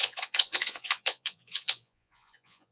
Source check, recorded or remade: remade